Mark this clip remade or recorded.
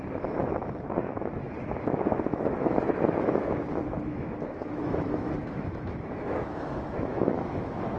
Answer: remade